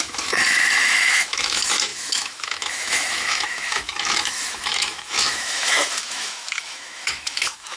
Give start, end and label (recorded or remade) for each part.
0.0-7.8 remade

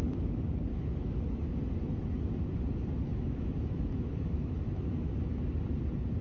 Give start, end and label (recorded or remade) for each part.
0.0-0.7 recorded; 0.7-1.6 remade; 1.6-3.1 recorded; 3.1-5.1 remade; 5.1-6.2 recorded

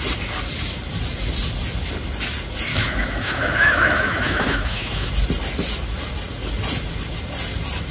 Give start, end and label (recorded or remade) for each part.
0.0-2.7 recorded; 2.7-5.1 remade; 5.1-7.9 recorded

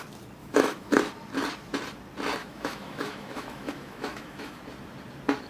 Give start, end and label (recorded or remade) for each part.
0.0-0.4 recorded; 0.4-1.0 remade; 1.0-2.4 recorded; 2.4-4.6 remade; 4.6-5.5 recorded